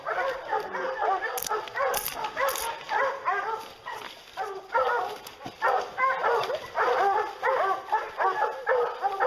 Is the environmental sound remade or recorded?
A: recorded